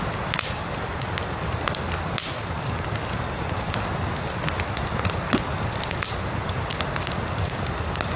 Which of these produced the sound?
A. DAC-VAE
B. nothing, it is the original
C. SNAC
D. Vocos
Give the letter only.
B